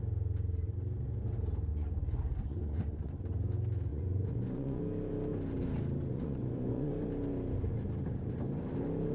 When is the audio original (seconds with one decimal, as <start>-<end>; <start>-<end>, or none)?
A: 0.0-1.7; 3.1-3.9; 4.8-6.1; 6.9-9.1